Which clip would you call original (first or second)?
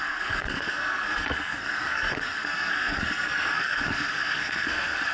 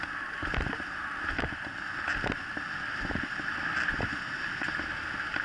second